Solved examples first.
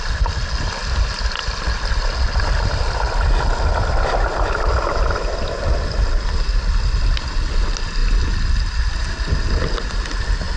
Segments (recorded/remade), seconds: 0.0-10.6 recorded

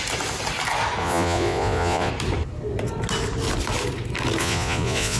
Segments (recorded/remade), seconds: 0.0-1.0 recorded; 1.0-2.1 remade; 2.1-4.4 recorded; 4.4-5.2 remade

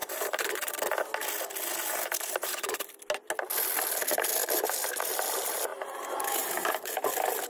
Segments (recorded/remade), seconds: 0.0-0.7 remade; 0.7-2.4 recorded; 2.4-2.9 remade; 2.9-5.7 recorded; 5.7-6.9 remade; 6.9-7.5 recorded

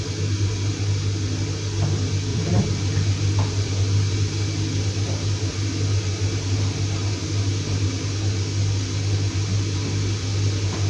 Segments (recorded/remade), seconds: 0.0-2.3 recorded; 2.3-3.8 remade; 3.8-10.9 recorded

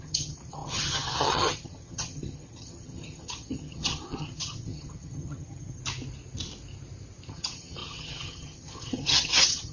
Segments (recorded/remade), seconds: 0.0-5.8 remade; 5.8-7.3 recorded; 7.3-9.7 remade

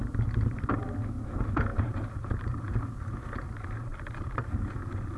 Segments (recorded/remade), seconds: 0.0-1.7 recorded; 1.7-2.6 remade; 2.6-3.9 recorded; 3.9-4.5 remade; 4.5-5.2 recorded

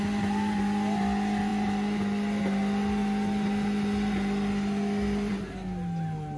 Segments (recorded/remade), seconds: 0.0-6.4 recorded